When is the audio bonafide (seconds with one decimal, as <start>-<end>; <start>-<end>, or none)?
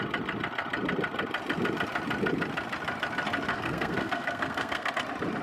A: 0.0-3.5; 4.9-5.4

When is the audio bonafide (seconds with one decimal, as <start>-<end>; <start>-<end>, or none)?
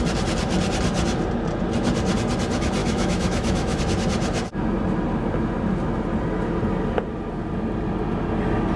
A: 0.0-2.8; 3.8-8.8